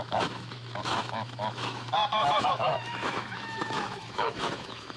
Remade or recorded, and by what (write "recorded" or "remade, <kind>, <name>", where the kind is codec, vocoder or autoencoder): remade, autoencoder, DAC-VAE